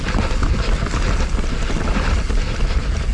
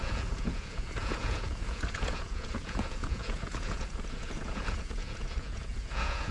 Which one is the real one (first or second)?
first